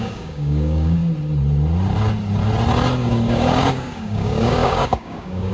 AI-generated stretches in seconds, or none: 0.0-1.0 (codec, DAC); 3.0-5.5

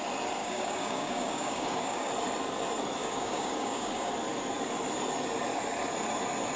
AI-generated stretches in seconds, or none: 0.4-2.1 (codec, DAC); 3.0-4.1

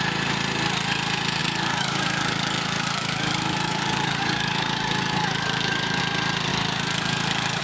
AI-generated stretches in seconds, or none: 1.4-6.0 (codec, DAC); 6.5-7.6

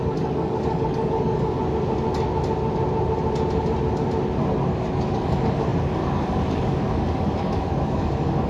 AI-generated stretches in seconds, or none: 0.0-1.6 (codec, DAC); 4.7-8.5

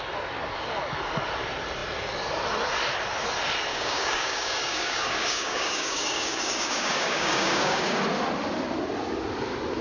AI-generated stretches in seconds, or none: 3.7-8.0 (codec, DAC)

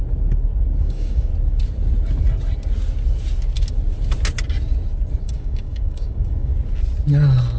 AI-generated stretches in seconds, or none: 0.8-1.3 (codec, DAC); 5.2-6.5

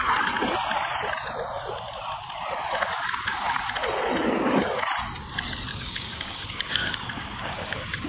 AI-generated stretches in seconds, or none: 5.7-8.1 (codec, DAC)

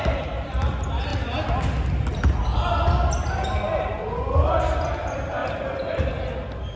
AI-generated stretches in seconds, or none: none